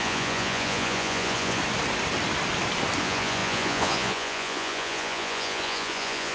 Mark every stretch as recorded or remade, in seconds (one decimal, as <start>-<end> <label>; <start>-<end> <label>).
0.0-1.6 remade; 1.6-3.0 recorded; 3.0-6.3 remade